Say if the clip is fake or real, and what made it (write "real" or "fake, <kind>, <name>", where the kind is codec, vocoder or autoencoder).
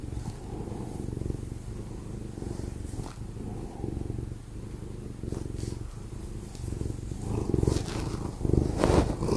real